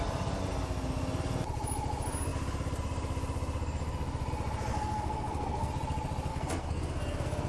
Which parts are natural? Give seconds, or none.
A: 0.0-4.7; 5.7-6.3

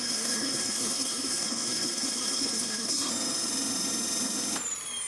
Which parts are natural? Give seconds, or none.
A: 3.1-5.1

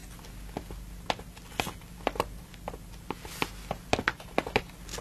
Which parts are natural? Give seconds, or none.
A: 0.0-5.0

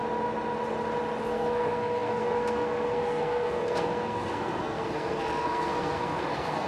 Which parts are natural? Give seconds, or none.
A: 0.0-1.2

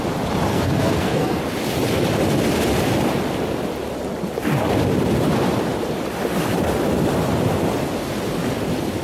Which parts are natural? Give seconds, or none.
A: 0.0-0.5; 1.4-9.0

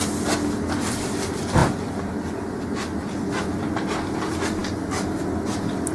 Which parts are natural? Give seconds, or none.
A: 0.0-5.9

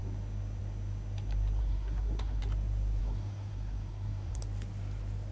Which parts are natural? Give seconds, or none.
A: 0.0-1.6; 2.4-3.0; 4.4-5.3